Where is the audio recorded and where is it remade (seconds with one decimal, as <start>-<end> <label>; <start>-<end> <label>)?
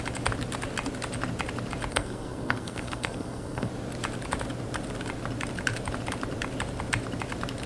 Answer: 0.0-1.9 recorded; 1.9-3.7 remade; 3.7-7.7 recorded